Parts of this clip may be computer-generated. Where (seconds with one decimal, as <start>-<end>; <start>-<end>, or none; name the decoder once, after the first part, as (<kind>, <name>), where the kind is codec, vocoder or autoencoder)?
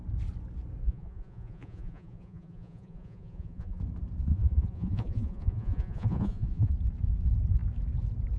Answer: 0.8-3.8 (vocoder, Vocos); 4.3-6.7